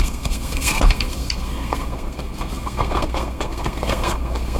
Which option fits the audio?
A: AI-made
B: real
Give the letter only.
A